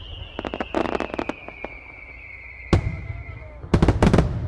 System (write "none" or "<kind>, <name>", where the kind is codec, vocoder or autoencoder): none